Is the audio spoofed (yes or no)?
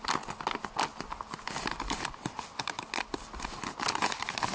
no